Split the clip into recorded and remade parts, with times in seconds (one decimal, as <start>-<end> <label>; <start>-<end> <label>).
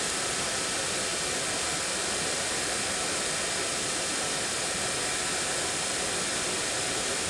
0.0-7.3 recorded